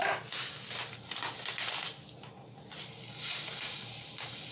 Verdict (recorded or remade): recorded